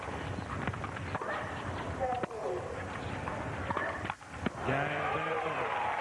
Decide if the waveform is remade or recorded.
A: remade